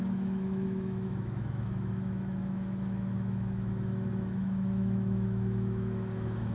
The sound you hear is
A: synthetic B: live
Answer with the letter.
A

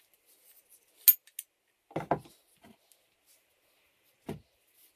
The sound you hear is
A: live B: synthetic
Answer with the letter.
A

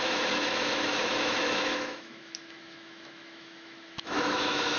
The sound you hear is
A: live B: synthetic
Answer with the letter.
B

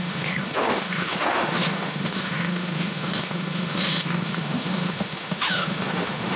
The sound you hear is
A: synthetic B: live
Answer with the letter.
A